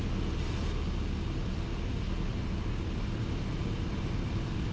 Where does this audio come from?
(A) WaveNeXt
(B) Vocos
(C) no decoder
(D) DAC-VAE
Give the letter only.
C